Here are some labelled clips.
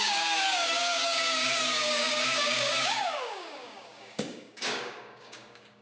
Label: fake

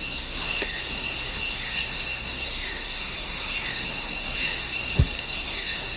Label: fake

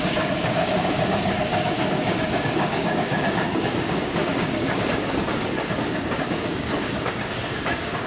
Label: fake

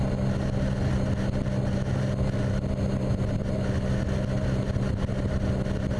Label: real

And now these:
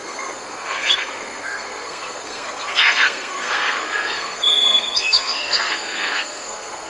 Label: fake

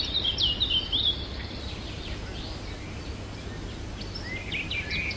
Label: real